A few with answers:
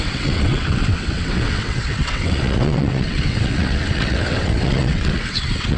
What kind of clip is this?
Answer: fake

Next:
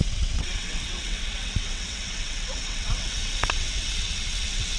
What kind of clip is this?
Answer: fake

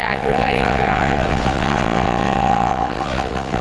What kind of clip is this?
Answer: fake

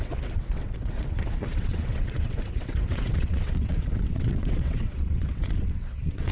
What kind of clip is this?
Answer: fake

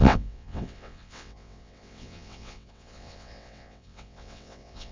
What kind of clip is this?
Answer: fake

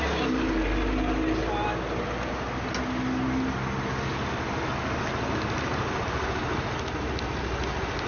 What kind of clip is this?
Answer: real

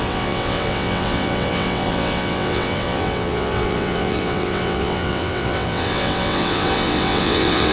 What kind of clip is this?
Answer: fake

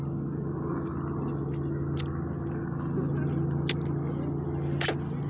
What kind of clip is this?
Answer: real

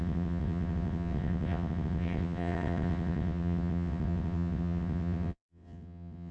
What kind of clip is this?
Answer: fake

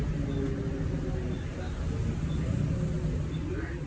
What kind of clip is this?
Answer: real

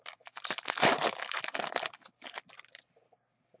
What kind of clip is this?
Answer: real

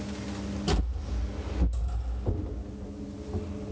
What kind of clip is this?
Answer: real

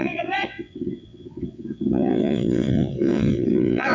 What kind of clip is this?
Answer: fake